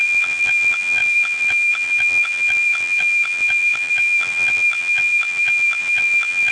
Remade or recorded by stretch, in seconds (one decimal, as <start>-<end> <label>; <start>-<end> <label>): 0.0-6.5 remade